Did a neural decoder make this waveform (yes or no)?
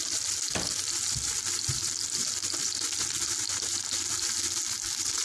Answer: no